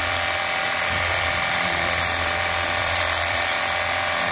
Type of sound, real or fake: fake